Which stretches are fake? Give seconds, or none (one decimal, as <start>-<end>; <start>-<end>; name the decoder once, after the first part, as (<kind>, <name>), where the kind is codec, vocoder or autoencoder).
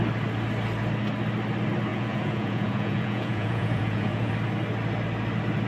1.9-4.3 (vocoder, Vocos)